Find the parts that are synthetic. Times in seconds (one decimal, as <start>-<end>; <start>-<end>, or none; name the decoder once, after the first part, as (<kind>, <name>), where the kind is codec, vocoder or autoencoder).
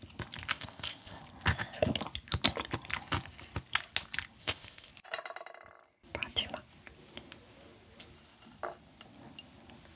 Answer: 0.5-1.2 (codec, ZipCodec); 4.4-4.9